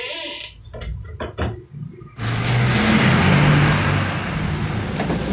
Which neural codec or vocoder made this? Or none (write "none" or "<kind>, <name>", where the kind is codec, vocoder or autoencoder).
none